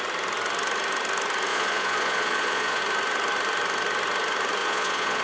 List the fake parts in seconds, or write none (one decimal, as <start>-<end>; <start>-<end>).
1.5-2.8; 4.6-5.2